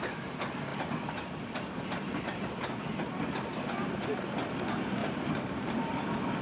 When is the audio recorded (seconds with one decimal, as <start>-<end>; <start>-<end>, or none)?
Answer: 0.0-5.0; 5.9-6.4